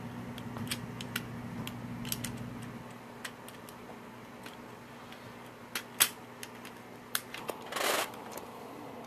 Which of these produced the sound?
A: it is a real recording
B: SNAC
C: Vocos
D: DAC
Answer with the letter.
A